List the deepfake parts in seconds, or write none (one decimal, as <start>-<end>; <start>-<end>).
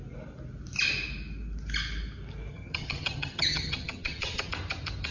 2.5-4.5